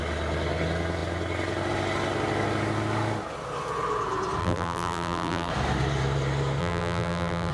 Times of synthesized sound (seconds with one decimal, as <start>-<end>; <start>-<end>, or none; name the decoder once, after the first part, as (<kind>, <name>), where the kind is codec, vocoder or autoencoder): 4.4-5.5 (vocoder, BigVGAN v2); 6.6-7.5